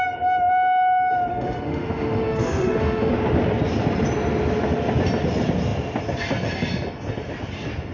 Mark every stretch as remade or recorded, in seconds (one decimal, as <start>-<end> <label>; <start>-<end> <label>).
0.0-1.3 recorded; 1.3-3.1 remade; 3.1-7.9 recorded